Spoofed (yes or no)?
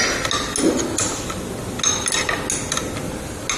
no